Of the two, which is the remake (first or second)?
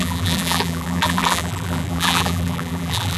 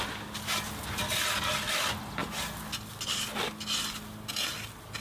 first